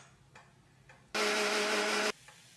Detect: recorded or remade recorded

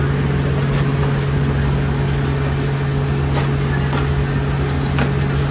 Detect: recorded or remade recorded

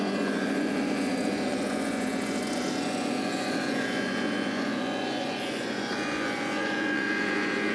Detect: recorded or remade remade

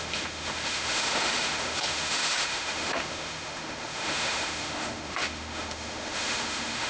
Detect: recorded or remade remade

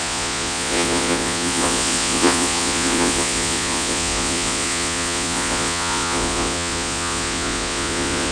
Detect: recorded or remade remade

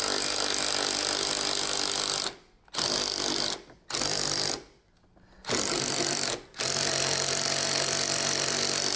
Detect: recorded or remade recorded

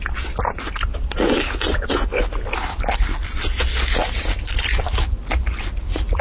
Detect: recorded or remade recorded